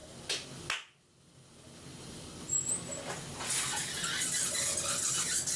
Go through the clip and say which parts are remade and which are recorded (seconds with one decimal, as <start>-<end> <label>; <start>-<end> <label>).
0.0-5.6 recorded